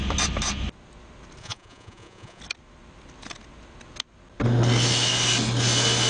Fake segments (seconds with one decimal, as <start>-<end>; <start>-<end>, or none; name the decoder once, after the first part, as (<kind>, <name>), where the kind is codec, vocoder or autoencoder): 1.4-2.4 (vocoder, Vocos)